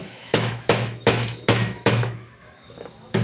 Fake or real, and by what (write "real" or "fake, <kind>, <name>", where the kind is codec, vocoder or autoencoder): fake, autoencoder, DAC-VAE